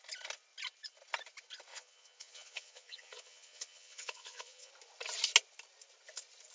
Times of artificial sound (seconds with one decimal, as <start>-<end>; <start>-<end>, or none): 1.7-4.7